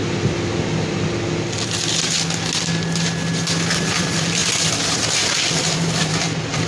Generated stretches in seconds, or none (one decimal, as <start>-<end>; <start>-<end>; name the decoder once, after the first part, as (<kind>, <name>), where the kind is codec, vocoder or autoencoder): 4.0-4.4 (vocoder, BigVGAN v2); 5.3-6.7